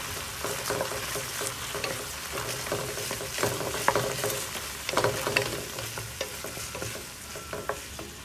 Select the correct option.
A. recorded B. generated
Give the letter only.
A